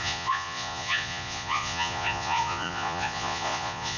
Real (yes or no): no